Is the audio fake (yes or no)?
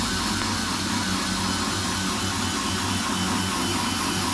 no